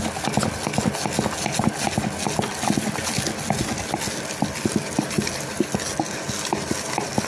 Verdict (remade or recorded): recorded